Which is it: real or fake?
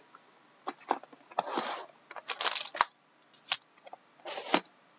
real